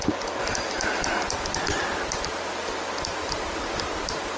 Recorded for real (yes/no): yes